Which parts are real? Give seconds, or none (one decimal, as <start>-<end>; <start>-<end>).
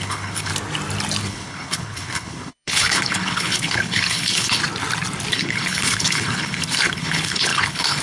0.5-1.2; 4.6-5.3